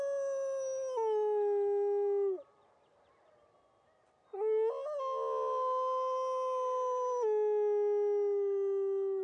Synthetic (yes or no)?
no